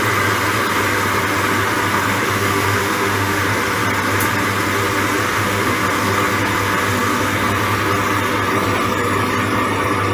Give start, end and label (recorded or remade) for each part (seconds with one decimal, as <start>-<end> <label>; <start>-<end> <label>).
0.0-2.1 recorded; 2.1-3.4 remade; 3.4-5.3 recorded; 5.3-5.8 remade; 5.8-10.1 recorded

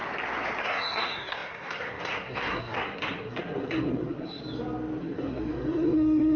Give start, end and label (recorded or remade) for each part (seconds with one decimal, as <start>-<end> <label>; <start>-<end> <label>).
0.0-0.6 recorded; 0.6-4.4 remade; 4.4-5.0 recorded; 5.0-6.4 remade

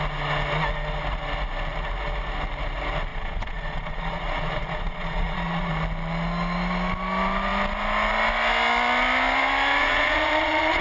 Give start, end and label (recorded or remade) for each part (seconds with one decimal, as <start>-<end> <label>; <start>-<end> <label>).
0.0-3.1 recorded; 3.1-5.7 remade; 5.7-9.8 recorded; 9.8-10.8 remade

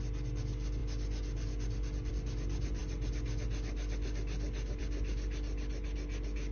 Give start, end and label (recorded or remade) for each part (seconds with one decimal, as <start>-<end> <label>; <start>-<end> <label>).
0.0-6.5 recorded